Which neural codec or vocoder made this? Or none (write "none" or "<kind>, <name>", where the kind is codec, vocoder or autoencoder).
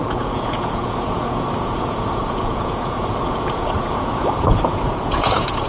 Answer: vocoder, Vocos